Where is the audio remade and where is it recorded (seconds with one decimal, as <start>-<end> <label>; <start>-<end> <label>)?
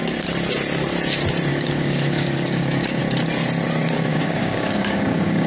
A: 0.0-1.5 recorded; 1.5-3.0 remade; 3.0-4.1 recorded; 4.1-5.5 remade